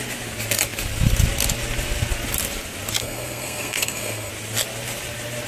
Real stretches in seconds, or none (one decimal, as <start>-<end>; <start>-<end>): 0.0-3.0; 4.3-5.5

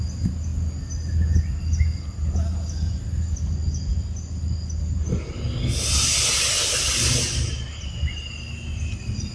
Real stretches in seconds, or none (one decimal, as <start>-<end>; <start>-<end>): 0.0-9.3

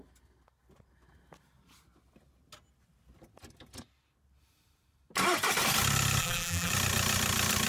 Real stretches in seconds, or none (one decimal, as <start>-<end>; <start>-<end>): 0.0-6.2; 6.7-7.7

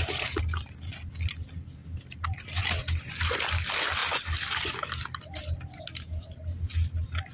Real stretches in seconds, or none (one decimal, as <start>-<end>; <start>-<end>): 0.0-7.3

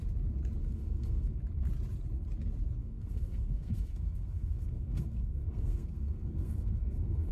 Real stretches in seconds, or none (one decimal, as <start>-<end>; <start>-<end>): 0.0-0.6; 1.4-2.8

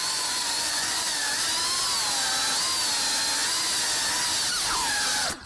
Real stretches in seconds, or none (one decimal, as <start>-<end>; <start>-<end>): 1.4-5.5

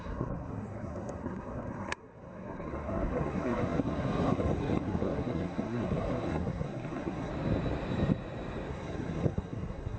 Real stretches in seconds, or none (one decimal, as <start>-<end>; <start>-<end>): 7.3-8.7